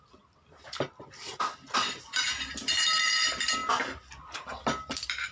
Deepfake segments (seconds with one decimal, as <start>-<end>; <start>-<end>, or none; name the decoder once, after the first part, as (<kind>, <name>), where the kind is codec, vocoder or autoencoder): none